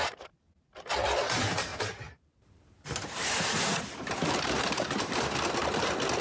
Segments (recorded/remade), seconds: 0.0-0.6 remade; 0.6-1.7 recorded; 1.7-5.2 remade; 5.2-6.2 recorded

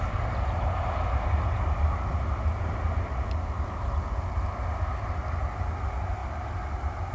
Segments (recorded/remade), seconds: 0.0-7.1 recorded

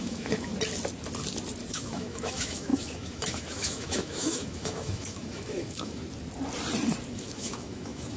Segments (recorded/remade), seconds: 0.0-0.5 remade; 0.5-1.7 recorded; 1.7-6.0 remade; 6.0-7.1 recorded; 7.1-8.2 remade

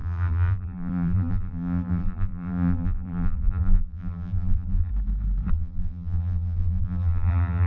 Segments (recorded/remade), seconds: 0.0-4.9 remade; 4.9-5.5 recorded; 5.5-7.7 remade